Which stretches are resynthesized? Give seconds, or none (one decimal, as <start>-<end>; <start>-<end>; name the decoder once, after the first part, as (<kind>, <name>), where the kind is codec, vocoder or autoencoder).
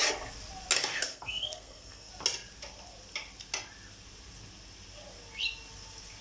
1.1-2.1 (codec, SNAC)